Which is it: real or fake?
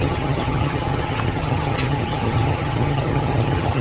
fake